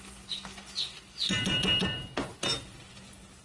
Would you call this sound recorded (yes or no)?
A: yes